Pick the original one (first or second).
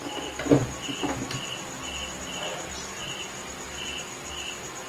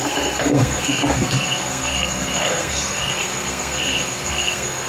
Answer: first